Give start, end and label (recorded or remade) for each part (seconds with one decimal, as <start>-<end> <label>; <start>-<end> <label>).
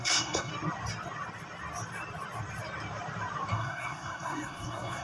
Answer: 0.0-0.5 remade; 0.5-3.5 recorded; 3.5-5.0 remade